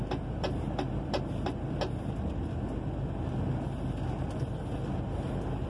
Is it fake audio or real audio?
real